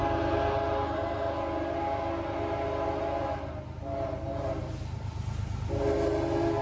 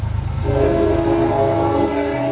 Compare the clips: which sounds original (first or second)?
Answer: first